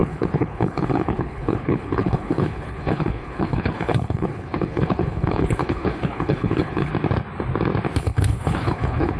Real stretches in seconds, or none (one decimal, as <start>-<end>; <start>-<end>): 6.9-8.0